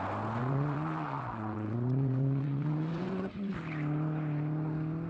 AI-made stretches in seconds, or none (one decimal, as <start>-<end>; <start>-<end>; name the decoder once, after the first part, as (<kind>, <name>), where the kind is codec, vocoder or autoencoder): 0.4-3.5 (vocoder, WaveNeXt)